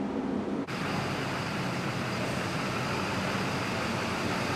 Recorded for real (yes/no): no